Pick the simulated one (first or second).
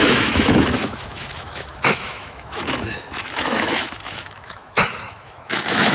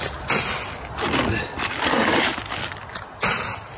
first